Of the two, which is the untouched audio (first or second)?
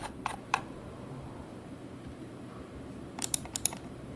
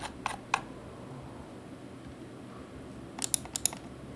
second